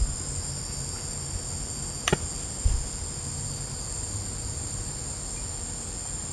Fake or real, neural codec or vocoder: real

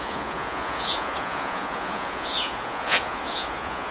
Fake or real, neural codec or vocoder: fake, vocoder, Vocos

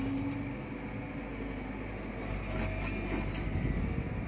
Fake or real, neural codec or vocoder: real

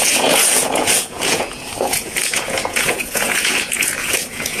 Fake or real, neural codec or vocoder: fake, vocoder, Vocos